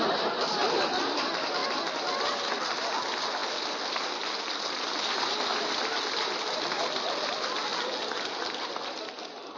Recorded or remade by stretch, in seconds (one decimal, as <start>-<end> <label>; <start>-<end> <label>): 0.0-9.6 recorded